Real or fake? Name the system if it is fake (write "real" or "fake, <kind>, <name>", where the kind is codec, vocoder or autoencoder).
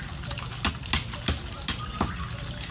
real